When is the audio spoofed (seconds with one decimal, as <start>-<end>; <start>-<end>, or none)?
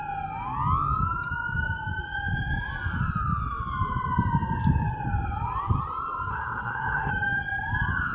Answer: 6.3-7.1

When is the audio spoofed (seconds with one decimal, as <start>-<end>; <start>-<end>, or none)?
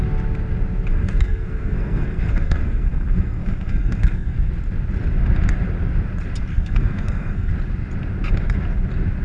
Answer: 0.9-4.5; 6.5-7.5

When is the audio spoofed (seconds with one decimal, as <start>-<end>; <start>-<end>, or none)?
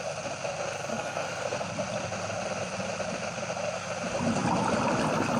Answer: 0.9-1.7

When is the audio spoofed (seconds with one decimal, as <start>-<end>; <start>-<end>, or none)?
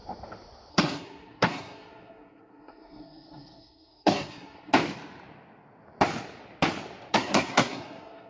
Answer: 0.7-4.7; 7.1-8.3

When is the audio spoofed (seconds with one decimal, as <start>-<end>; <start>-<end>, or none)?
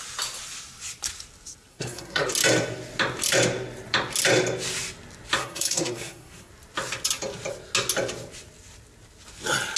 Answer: 1.7-2.3; 5.4-6.5